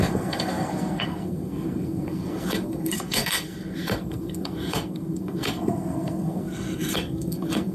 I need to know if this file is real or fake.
fake